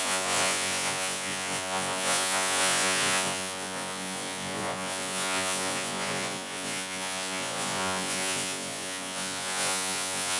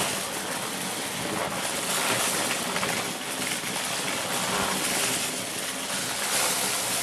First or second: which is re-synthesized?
first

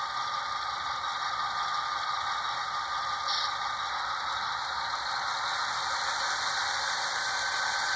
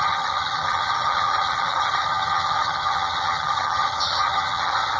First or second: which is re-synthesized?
second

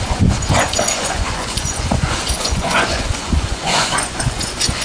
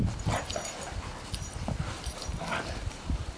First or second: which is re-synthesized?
first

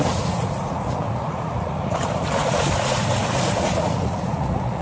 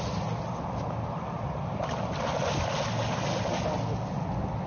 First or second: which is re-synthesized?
first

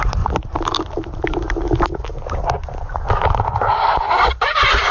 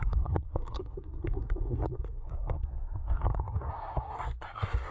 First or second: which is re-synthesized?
second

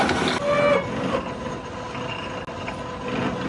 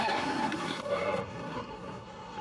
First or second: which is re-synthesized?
second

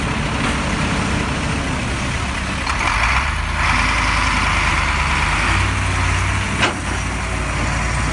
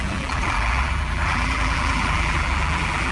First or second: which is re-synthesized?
second